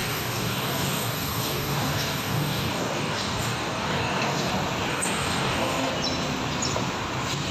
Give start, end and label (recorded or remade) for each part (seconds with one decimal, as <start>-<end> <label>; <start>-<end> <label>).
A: 0.0-4.5 remade; 4.5-4.9 recorded; 4.9-5.9 remade; 5.9-7.5 recorded